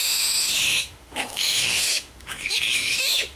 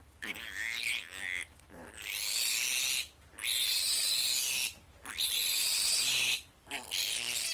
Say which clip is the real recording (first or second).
second